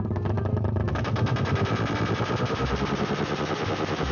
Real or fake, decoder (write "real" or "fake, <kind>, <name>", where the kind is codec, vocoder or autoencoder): real